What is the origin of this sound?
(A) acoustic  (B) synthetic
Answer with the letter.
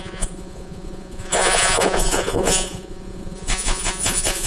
B